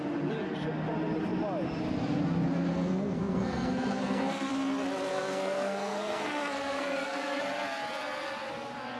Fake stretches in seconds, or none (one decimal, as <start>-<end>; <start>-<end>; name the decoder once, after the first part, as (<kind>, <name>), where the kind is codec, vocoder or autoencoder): 2.7-4.5 (codec, SNAC); 5.1-7.4